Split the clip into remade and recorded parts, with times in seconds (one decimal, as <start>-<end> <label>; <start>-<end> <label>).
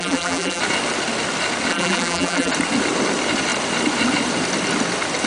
0.0-0.6 remade; 0.6-1.7 recorded; 1.7-2.5 remade; 2.5-5.3 recorded